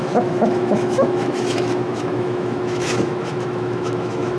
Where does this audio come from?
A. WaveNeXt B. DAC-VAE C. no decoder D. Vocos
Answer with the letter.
B